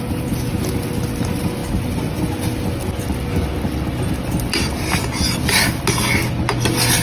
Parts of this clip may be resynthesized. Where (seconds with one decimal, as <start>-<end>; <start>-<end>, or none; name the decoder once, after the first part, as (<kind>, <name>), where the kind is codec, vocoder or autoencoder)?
none